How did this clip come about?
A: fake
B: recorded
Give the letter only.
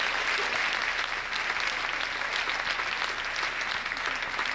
B